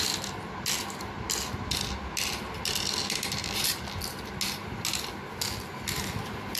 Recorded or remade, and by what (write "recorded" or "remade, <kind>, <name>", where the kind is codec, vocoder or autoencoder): recorded